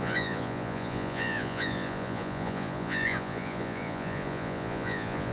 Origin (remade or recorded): remade